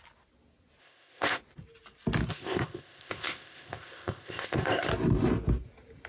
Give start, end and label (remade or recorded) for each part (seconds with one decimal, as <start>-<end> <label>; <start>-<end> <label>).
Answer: 0.0-0.8 recorded; 0.8-1.4 remade; 1.4-2.3 recorded; 2.3-4.9 remade; 4.9-6.1 recorded